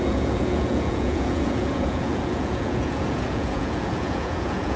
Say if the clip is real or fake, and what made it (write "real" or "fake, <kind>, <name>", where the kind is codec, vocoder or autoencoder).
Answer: fake, vocoder, Vocos